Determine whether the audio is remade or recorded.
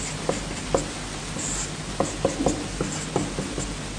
recorded